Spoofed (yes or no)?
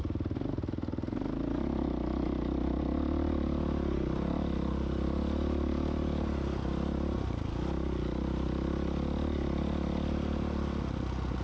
no